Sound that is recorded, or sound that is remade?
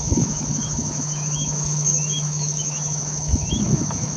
remade